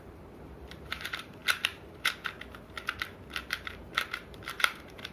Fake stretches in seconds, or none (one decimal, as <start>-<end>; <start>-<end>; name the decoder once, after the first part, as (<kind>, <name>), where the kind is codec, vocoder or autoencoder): 0.0-1.4 (vocoder, BigVGAN v2); 3.5-5.1